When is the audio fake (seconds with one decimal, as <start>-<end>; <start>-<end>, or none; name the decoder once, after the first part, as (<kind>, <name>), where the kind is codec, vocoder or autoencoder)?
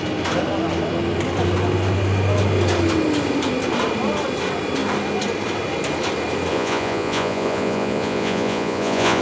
6.5-9.2 (vocoder, Vocos)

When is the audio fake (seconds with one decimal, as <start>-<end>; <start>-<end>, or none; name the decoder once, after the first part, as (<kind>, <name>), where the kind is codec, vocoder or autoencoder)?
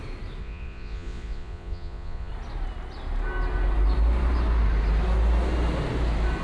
0.4-2.3 (vocoder, Vocos)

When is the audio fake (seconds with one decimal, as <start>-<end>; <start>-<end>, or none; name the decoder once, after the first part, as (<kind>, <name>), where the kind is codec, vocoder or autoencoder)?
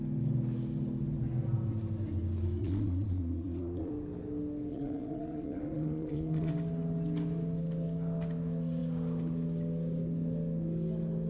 2.6-3.9 (vocoder, Vocos); 4.7-6.5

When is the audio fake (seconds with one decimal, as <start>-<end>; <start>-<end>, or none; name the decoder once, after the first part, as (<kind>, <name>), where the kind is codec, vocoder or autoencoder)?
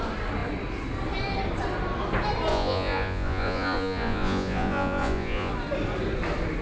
2.5-5.5 (vocoder, Vocos)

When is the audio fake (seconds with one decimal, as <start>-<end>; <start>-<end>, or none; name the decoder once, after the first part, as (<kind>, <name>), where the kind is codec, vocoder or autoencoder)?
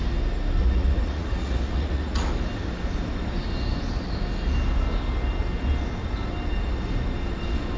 0.6-2.3 (vocoder, Vocos)